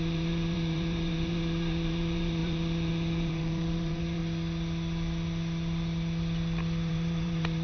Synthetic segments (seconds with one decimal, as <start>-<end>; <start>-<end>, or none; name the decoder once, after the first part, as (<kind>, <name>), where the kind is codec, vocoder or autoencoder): 0.0-4.2 (vocoder, BigVGAN v2); 6.9-7.6